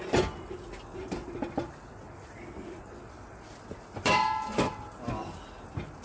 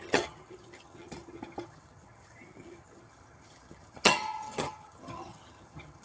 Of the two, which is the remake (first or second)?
second